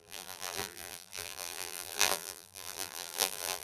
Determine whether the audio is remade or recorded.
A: remade